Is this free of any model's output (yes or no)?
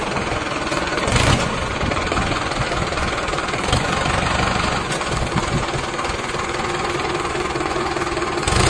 no